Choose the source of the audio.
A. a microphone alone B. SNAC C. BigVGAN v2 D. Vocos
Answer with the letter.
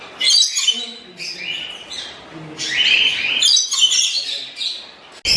A